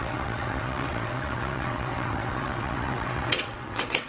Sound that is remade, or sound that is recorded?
remade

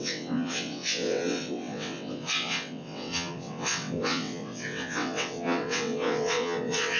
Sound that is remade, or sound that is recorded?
remade